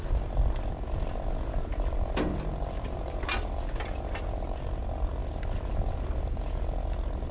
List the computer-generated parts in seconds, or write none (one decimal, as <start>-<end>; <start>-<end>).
none